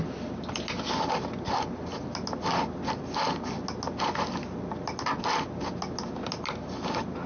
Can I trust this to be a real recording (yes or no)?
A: yes